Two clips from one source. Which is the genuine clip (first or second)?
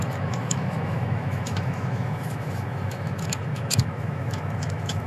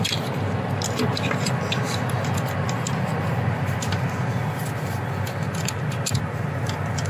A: second